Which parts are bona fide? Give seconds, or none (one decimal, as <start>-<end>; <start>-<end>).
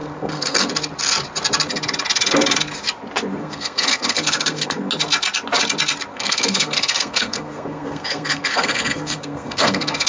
0.7-3.4; 4.9-6.1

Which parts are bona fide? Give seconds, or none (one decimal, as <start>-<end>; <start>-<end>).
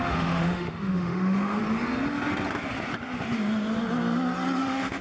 1.6-4.6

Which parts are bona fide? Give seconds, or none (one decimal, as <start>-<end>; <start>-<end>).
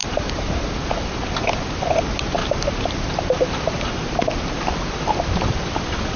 2.0-6.2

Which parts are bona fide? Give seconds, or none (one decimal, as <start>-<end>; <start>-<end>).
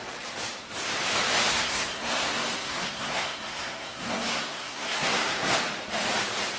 0.0-1.5; 5.5-6.6